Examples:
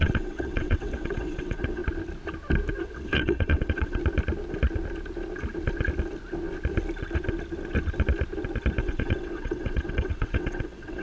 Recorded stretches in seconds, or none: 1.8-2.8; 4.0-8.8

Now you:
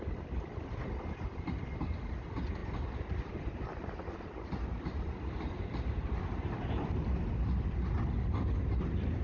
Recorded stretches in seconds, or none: none

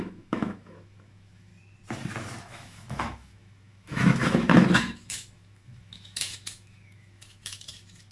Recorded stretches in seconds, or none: 1.5-2.4

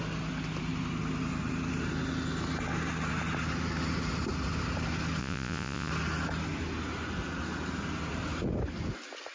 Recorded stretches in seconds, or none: 0.0-5.2; 5.9-9.3